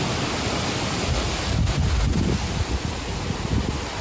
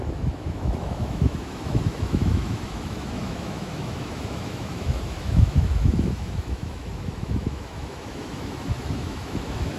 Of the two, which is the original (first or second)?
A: first